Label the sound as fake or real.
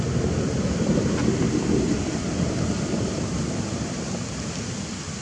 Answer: real